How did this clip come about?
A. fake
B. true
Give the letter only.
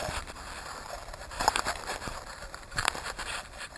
A